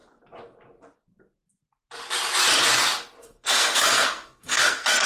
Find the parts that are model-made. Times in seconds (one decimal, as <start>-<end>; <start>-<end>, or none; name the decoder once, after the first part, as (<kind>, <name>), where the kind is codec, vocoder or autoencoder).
3.2-5.1 (codec, SNAC)